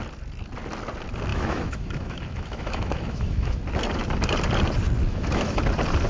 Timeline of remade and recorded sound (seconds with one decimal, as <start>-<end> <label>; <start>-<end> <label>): 0.0-1.3 recorded; 1.3-3.6 remade; 3.6-5.1 recorded; 5.1-5.6 remade; 5.6-6.1 recorded